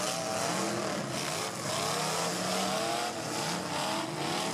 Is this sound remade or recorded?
recorded